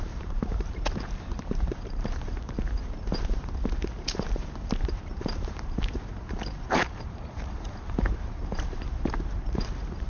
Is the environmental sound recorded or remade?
remade